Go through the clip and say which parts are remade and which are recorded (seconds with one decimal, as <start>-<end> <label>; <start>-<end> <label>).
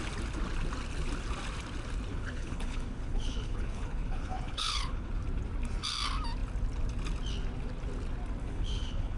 0.0-2.1 recorded; 2.1-5.1 remade; 5.1-8.4 recorded; 8.4-9.2 remade